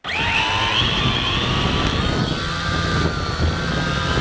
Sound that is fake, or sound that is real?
real